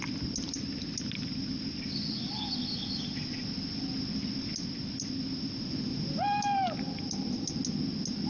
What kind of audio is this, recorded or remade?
recorded